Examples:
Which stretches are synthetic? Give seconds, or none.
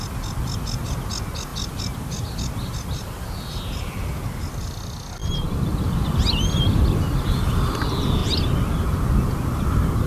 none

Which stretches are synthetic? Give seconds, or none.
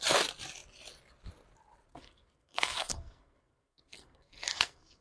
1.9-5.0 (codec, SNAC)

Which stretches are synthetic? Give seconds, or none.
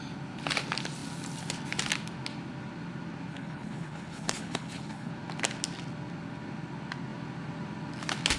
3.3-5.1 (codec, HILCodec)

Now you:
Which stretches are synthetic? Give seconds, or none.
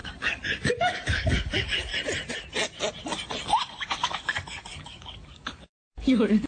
0.0-1.9 (codec, DAC); 3.7-6.5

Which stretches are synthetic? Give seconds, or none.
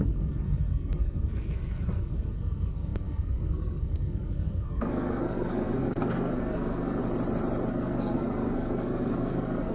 0.0-7.0 (codec, SNAC); 7.7-9.7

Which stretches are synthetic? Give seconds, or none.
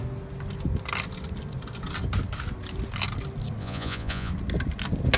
3.6-4.3 (vocoder, Vocos)